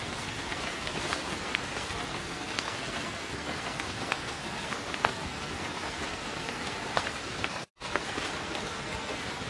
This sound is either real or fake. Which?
fake